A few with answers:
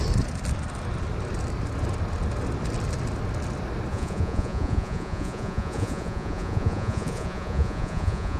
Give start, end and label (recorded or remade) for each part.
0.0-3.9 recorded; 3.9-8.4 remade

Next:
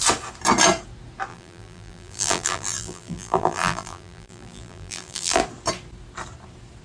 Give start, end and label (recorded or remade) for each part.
0.0-1.3 recorded; 1.3-5.4 remade; 5.4-6.8 recorded

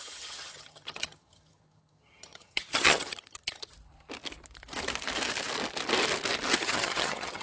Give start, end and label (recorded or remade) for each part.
0.0-3.7 remade; 3.7-6.6 recorded; 6.6-7.4 remade

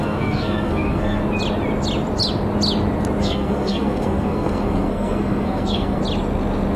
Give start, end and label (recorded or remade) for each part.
0.0-1.2 remade; 1.2-3.2 recorded; 3.2-6.0 remade; 6.0-6.8 recorded